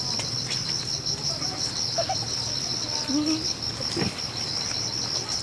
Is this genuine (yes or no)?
yes